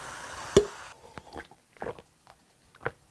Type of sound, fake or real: real